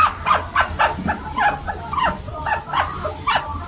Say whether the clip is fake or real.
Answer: real